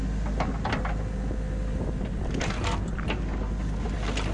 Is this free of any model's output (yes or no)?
yes